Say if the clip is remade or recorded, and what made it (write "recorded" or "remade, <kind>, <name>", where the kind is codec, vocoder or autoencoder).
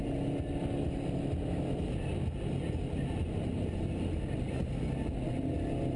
recorded